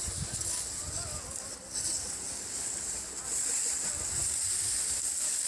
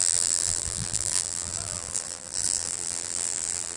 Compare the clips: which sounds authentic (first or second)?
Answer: first